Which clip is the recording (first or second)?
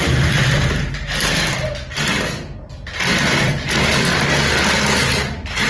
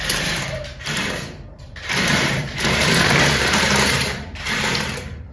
first